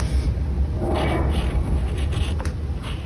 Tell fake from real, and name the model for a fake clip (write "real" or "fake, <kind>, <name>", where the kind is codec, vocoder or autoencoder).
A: real